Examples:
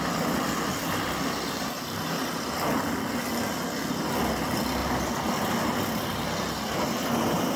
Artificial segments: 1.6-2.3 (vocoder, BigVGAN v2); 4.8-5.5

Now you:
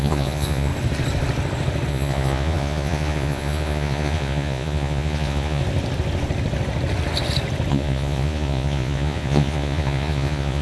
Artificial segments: 0.0-0.7 (vocoder, Vocos); 1.9-5.6; 7.7-10.6